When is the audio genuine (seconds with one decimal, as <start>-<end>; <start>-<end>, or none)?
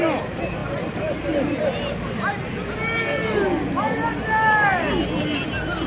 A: 0.0-5.9